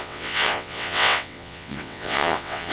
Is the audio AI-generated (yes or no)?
yes